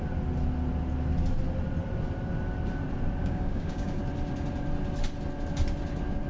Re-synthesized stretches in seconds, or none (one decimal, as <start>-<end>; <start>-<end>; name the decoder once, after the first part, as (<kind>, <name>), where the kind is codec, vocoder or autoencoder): 3.2-4.0 (codec, DAC)